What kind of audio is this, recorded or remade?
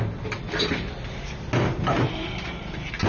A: recorded